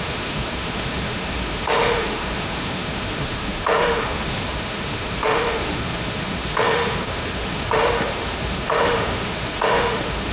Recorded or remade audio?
remade